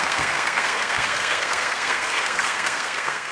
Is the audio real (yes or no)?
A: no